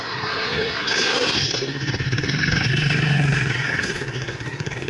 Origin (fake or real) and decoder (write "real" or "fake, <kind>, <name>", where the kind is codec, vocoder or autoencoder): fake, codec, SNAC